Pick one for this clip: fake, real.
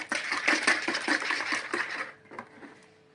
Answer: real